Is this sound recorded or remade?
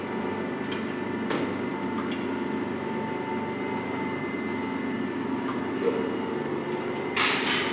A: recorded